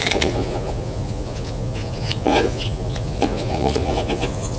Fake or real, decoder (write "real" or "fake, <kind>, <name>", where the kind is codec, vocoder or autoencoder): fake, vocoder, Vocos